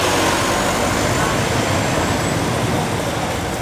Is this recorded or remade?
recorded